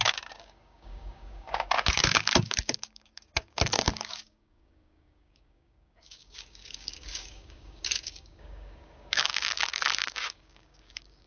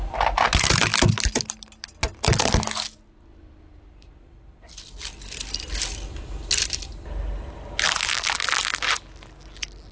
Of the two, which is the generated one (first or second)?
first